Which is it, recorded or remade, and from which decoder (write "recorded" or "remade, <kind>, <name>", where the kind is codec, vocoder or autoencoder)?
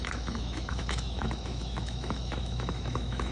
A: remade, autoencoder, DAC-VAE